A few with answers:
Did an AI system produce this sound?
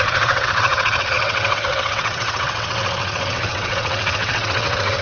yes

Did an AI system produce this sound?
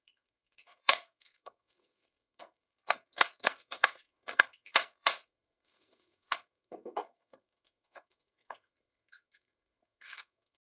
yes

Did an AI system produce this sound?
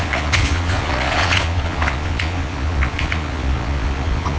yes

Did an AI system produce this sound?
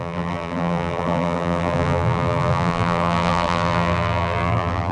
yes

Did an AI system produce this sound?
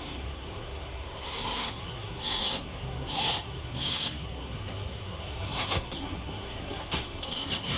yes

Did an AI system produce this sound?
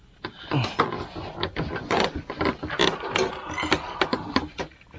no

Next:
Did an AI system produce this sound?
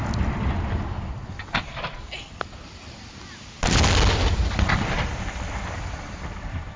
no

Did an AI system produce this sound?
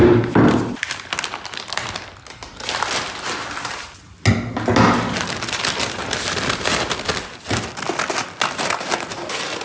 no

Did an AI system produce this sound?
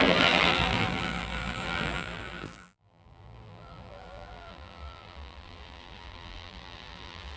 yes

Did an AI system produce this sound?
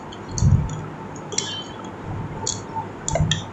no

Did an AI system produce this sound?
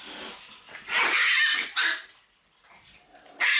no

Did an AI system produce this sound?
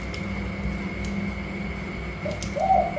no